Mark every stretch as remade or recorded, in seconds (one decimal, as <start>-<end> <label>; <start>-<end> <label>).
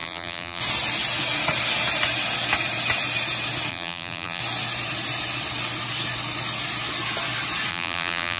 0.0-0.6 remade; 0.6-3.7 recorded; 3.7-4.4 remade; 4.4-7.7 recorded; 7.7-8.4 remade